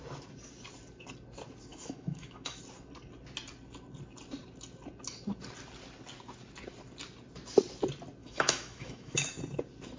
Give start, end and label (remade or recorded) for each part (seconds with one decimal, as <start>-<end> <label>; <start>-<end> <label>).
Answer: 0.0-1.7 recorded; 1.7-2.6 remade; 2.6-8.2 recorded; 8.2-9.4 remade; 9.4-10.0 recorded